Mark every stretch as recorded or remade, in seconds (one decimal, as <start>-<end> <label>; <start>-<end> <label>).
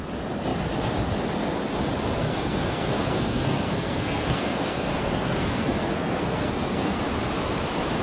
0.0-2.2 recorded; 2.2-7.0 remade; 7.0-8.0 recorded